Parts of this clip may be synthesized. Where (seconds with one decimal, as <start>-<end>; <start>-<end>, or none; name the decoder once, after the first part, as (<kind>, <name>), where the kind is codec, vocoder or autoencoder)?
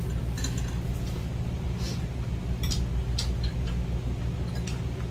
none